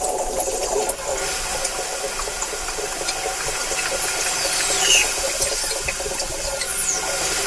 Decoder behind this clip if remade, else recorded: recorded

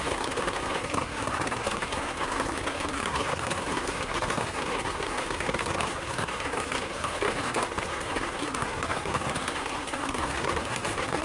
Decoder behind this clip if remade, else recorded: remade, codec, SNAC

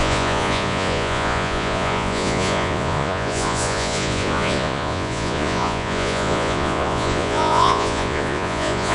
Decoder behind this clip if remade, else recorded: remade, vocoder, Vocos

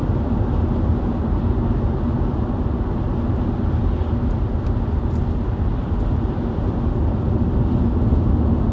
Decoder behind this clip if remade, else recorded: recorded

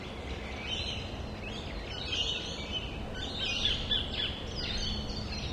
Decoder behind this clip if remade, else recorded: recorded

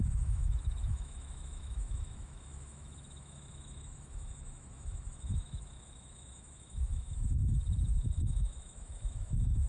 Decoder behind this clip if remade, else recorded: remade, autoencoder, DAC-VAE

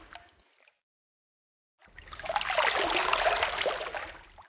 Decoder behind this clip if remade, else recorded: recorded